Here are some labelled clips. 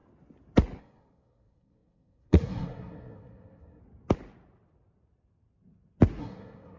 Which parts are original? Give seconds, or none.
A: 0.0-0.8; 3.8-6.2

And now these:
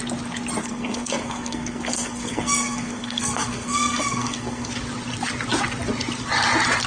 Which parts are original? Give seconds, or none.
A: 0.0-0.6; 4.7-6.9

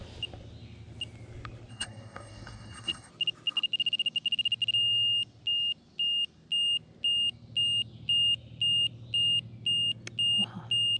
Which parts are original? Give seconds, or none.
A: 0.0-1.7; 3.1-11.0

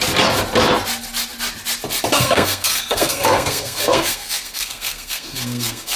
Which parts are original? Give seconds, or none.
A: 0.0-2.1